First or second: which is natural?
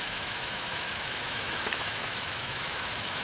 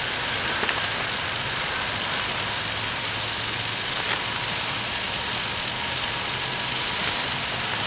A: second